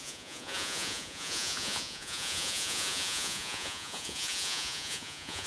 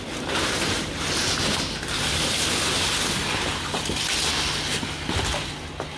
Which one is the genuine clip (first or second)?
second